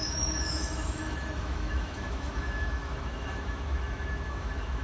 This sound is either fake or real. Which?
fake